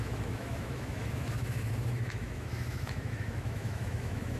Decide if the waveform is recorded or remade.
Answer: remade